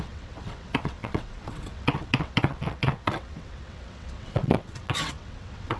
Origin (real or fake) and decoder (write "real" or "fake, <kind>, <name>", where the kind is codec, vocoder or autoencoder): fake, vocoder, WaveNeXt